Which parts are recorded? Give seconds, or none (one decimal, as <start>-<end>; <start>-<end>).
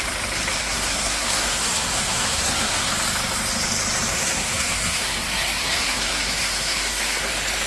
0.0-0.6; 2.9-4.1; 7.3-7.7